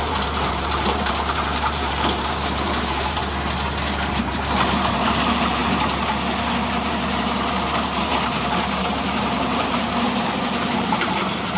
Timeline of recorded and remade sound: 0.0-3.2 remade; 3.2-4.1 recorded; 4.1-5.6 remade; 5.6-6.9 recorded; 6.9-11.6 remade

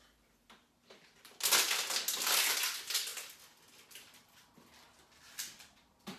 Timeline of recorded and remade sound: 0.0-6.2 recorded

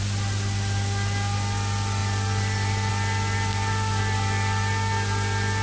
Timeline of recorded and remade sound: 0.0-2.0 recorded; 2.0-2.9 remade; 2.9-5.6 recorded

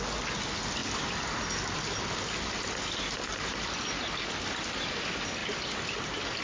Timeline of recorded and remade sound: 0.0-6.4 recorded

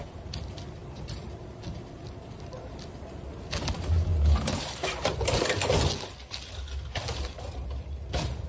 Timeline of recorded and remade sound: 0.0-0.8 recorded; 0.8-1.5 remade; 1.5-4.1 recorded; 4.1-5.2 remade; 5.2-8.5 recorded

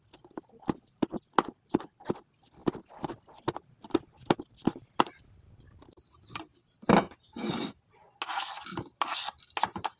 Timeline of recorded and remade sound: 0.0-10.0 recorded

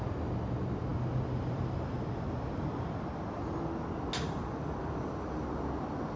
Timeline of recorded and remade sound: 0.0-6.2 recorded

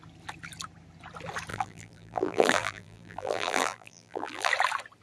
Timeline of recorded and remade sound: 0.0-1.5 recorded; 1.5-4.5 remade; 4.5-5.0 recorded